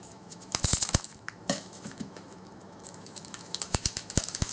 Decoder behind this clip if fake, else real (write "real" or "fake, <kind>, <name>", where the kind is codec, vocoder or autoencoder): fake, autoencoder, DAC-VAE